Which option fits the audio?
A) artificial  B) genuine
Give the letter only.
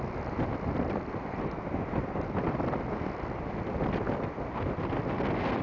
B